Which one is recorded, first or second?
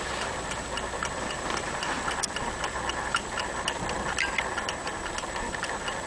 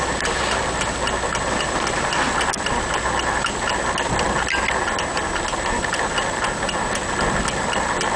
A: second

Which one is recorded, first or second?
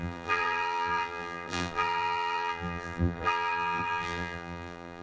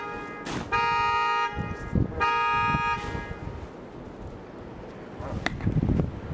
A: second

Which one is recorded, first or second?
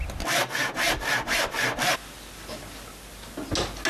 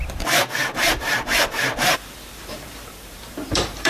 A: first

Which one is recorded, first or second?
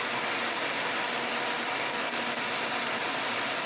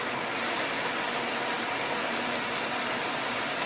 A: first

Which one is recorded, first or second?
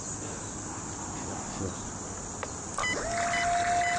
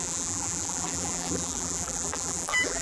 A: first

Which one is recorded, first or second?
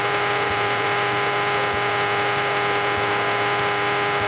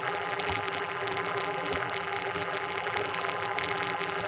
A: first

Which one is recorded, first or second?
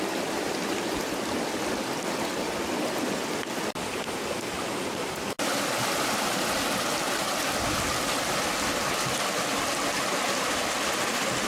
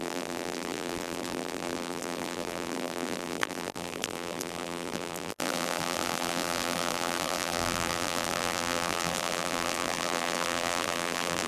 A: first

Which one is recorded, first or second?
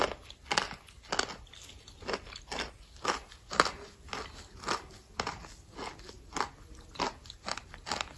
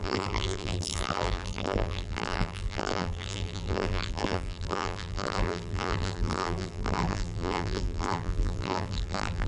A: first